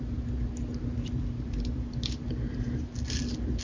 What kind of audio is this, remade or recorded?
recorded